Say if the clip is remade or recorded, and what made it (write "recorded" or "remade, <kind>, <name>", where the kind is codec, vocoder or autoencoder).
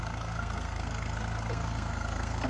remade, codec, SNAC